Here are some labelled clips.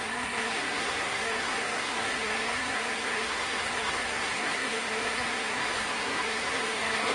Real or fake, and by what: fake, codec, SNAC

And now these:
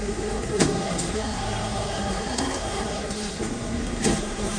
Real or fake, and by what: fake, codec, SNAC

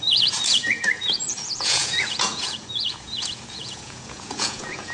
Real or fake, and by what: fake, vocoder, Vocos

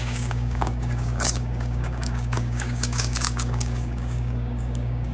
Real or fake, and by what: fake, codec, DAC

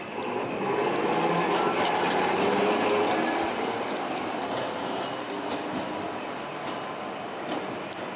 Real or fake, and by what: real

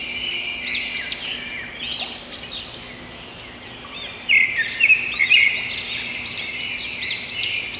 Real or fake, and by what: real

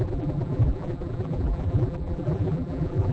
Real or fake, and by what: fake, vocoder, BigVGAN v2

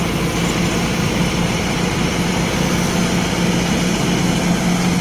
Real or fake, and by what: real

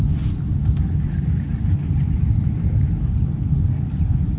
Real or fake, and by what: real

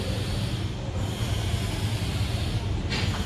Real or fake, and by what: real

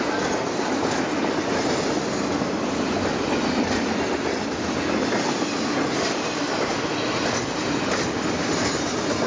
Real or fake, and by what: real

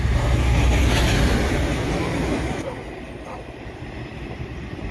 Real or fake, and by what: real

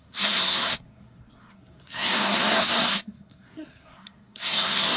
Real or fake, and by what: fake, codec, SNAC